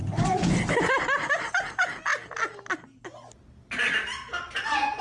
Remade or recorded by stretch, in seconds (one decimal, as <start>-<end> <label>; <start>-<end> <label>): 0.0-5.0 recorded

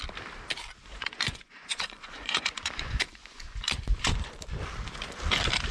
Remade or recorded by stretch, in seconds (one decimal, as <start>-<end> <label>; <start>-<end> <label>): 0.0-0.9 recorded; 0.9-4.3 remade; 4.3-5.7 recorded

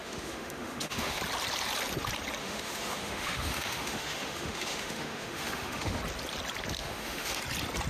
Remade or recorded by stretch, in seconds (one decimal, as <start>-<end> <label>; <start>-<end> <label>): 0.0-1.2 remade; 1.2-2.4 recorded; 2.4-6.0 remade; 6.0-6.8 recorded; 6.8-7.4 remade; 7.4-7.9 recorded

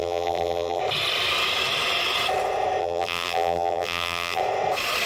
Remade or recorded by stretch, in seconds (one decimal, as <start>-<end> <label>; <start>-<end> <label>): 0.0-0.8 remade; 0.8-2.8 recorded; 2.8-4.4 remade; 4.4-5.1 recorded

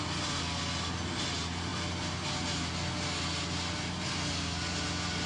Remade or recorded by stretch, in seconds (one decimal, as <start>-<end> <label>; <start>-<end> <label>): 0.0-5.3 recorded

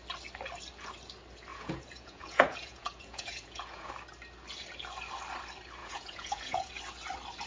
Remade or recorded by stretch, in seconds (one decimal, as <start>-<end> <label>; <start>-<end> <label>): 0.0-1.5 recorded; 1.5-3.9 remade; 3.9-5.8 recorded; 5.8-6.7 remade; 6.7-7.5 recorded